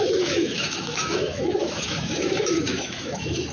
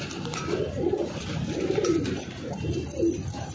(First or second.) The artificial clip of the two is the first